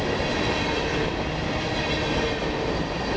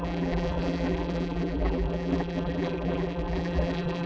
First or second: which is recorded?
first